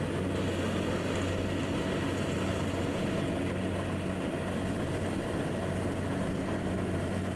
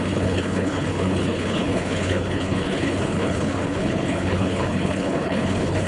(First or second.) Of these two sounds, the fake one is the second